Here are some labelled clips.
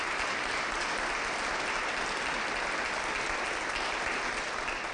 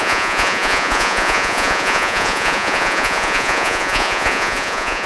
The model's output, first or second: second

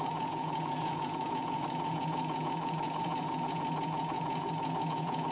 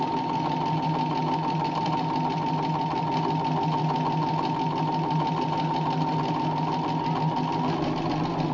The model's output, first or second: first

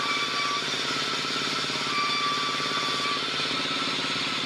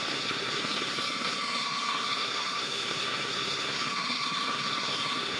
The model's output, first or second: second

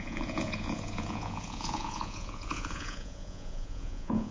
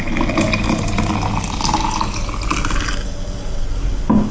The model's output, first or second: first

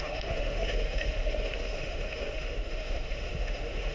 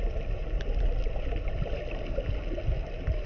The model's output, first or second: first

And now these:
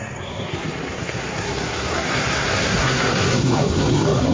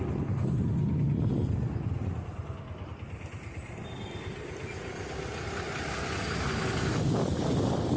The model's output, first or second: first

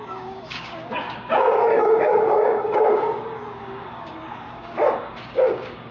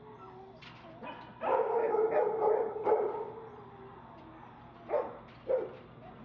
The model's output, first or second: first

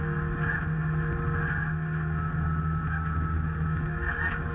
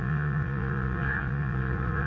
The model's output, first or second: second